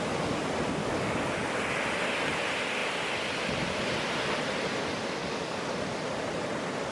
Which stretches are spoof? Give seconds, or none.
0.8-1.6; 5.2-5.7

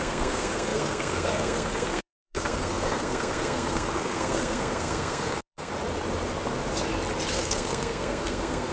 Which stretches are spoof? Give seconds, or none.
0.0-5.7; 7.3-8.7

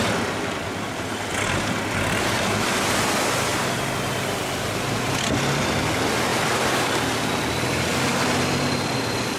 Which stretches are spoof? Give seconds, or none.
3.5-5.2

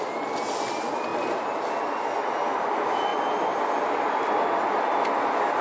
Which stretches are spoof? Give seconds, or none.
none

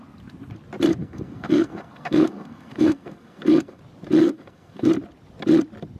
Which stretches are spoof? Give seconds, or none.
1.0-3.8; 4.2-4.9

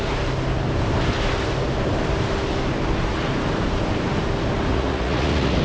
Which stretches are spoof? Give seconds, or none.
4.7-5.6

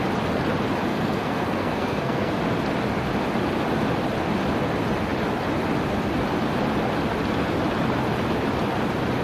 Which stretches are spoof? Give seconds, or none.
0.9-2.4